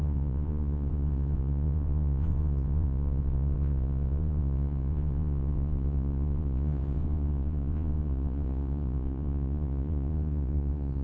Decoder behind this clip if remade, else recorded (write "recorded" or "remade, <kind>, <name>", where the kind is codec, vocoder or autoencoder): remade, vocoder, Vocos